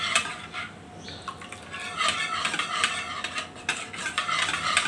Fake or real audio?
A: real